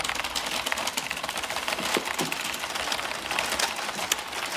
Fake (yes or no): no